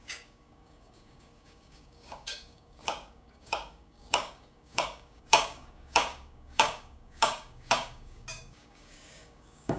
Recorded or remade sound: remade